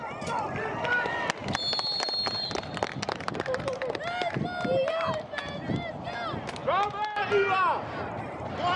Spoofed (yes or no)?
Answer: no